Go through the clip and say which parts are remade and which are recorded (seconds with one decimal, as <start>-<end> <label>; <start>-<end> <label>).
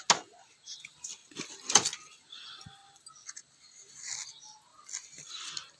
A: 0.0-1.2 recorded; 1.2-2.2 remade; 2.2-2.8 recorded; 2.8-3.5 remade; 3.5-5.8 recorded